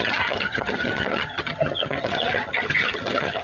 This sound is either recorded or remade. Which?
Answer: remade